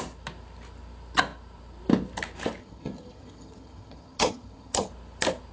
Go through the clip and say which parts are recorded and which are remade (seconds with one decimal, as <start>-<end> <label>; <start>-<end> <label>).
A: 0.0-2.6 recorded; 2.6-4.9 remade; 4.9-5.5 recorded